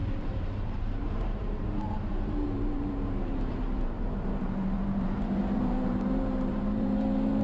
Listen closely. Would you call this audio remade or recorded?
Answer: remade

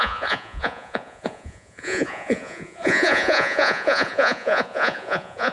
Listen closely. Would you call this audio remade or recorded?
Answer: remade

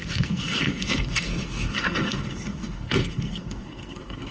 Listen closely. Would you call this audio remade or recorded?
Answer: remade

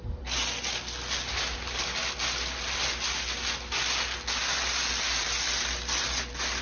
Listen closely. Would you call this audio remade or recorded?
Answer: recorded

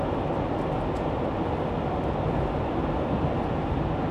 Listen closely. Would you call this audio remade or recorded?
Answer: recorded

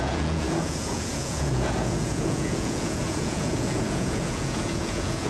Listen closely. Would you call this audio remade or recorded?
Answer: remade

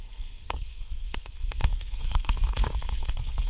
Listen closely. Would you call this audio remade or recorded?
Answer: remade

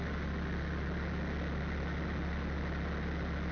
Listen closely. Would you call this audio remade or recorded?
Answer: recorded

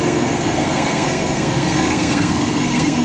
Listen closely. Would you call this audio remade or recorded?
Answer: remade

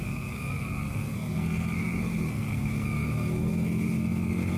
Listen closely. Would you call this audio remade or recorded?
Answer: remade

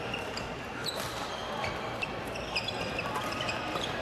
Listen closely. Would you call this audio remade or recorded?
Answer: recorded